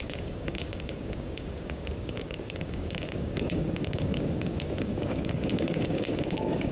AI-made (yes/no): yes